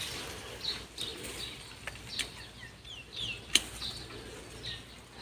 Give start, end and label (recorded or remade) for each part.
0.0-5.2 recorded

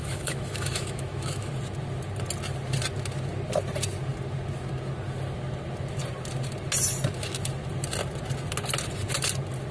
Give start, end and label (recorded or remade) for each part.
0.0-1.5 remade; 1.5-9.7 recorded

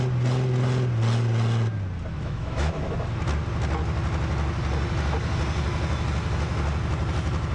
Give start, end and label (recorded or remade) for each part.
0.0-2.1 recorded; 2.1-2.9 remade; 2.9-7.5 recorded

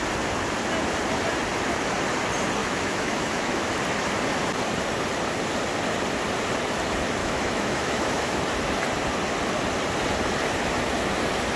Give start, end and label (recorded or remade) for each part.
0.0-2.6 recorded; 2.6-3.7 remade; 3.7-7.2 recorded; 7.2-8.4 remade; 8.4-11.6 recorded

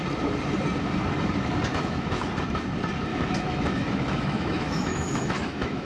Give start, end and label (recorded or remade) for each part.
0.0-1.7 recorded; 1.7-2.3 remade; 2.3-3.1 recorded; 3.1-5.9 remade

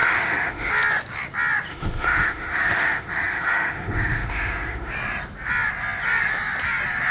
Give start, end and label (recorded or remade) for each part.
0.0-0.7 remade; 0.7-1.7 recorded; 1.7-4.9 remade; 4.9-7.1 recorded

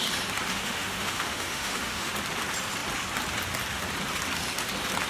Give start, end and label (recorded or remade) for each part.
0.0-0.5 recorded; 0.5-2.1 remade; 2.1-5.1 recorded